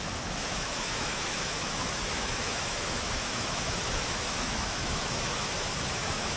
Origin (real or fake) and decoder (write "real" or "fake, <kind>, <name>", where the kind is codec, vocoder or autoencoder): fake, autoencoder, DAC-VAE